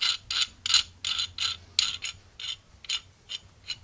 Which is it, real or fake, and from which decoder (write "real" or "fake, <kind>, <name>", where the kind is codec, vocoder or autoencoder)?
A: real